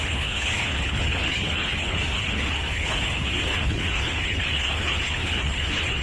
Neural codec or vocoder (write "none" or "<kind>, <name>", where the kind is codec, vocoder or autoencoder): codec, HILCodec